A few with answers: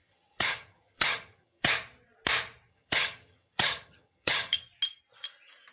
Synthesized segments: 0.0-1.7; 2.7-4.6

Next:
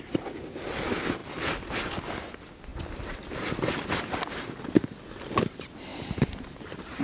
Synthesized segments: none

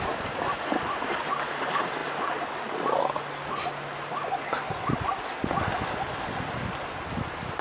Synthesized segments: none

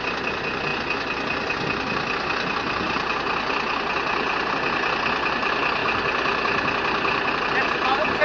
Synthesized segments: none

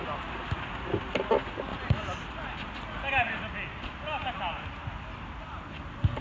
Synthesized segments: none